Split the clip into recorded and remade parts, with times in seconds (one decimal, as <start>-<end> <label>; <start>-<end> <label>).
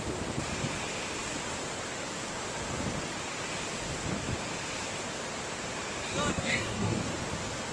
0.0-6.3 recorded; 6.3-7.0 remade; 7.0-7.7 recorded